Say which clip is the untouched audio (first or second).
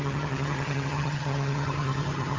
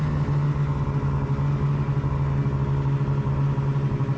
second